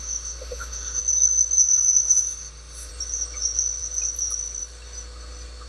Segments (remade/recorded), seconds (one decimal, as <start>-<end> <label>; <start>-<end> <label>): 0.0-1.0 remade; 1.0-1.6 recorded; 1.6-2.9 remade; 2.9-5.7 recorded